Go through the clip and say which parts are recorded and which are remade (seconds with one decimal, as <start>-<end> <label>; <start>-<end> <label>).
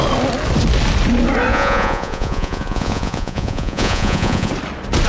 0.0-1.5 recorded; 1.5-4.5 remade; 4.5-5.1 recorded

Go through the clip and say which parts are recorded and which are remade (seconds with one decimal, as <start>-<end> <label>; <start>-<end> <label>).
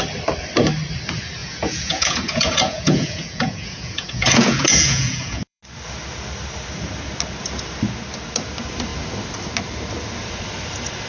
0.0-1.4 recorded; 1.4-5.6 remade; 5.6-11.1 recorded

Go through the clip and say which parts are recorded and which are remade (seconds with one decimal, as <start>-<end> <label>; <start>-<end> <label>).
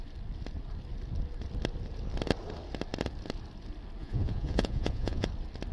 0.0-4.0 recorded; 4.0-5.3 remade; 5.3-5.7 recorded